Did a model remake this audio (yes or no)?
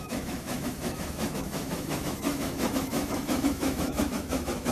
yes